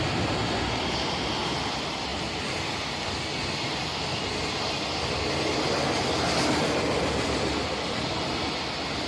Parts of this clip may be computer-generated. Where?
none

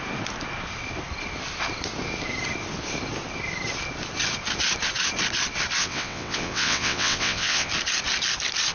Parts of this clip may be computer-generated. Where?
5.8-7.7